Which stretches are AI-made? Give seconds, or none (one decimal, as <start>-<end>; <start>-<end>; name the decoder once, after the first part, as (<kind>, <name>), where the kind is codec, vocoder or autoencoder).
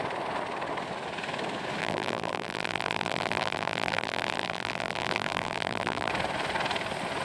1.8-6.1 (vocoder, BigVGAN v2)